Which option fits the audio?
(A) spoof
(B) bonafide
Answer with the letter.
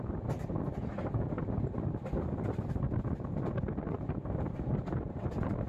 A